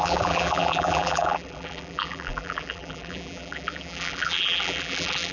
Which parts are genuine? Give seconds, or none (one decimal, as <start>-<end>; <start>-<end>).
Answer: none